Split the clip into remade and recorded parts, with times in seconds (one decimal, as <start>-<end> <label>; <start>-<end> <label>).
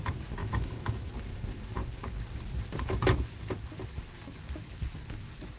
0.0-0.4 recorded; 0.4-1.1 remade; 1.1-5.6 recorded